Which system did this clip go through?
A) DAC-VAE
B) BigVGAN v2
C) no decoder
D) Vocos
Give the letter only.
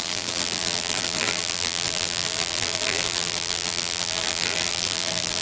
B